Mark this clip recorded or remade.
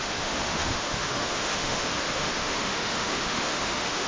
remade